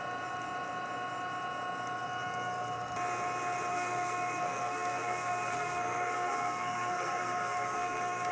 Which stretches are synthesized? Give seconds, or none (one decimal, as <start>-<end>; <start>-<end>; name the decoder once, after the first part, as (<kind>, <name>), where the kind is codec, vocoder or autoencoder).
3.7-8.3 (codec, SNAC)